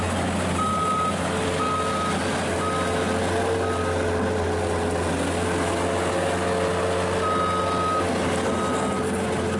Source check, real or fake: real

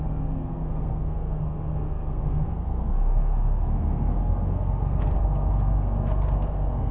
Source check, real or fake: fake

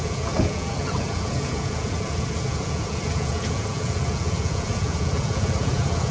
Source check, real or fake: fake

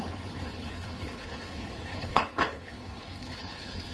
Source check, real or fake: fake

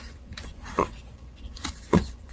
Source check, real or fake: fake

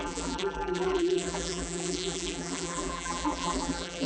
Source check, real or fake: fake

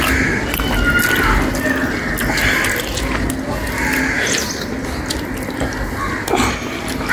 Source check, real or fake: real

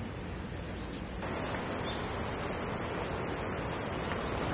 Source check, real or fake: real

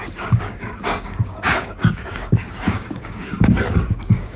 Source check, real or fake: fake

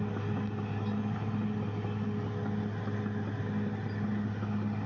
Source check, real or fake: real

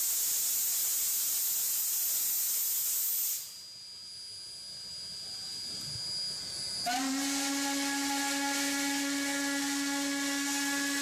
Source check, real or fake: real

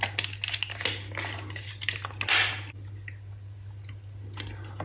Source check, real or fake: real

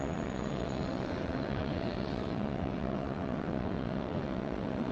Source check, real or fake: fake